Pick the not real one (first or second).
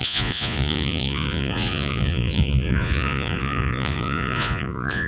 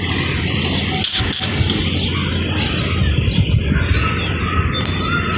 first